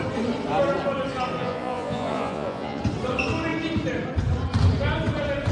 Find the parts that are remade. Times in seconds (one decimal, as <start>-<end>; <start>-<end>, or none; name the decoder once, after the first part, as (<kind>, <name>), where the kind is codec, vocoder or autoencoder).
1.4-2.8 (vocoder, Vocos)